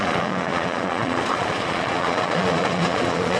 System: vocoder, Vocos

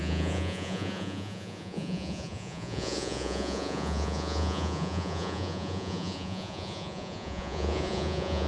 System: vocoder, Vocos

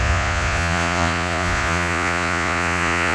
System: vocoder, Vocos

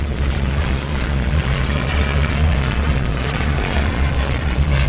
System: vocoder, Vocos